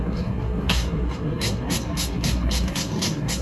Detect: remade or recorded remade